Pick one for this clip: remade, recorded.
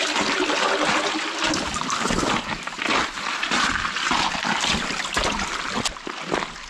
recorded